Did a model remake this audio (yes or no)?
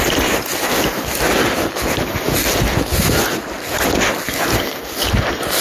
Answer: no